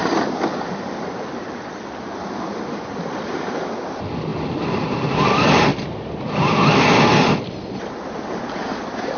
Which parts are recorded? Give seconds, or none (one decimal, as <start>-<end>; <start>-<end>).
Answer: 0.0-9.2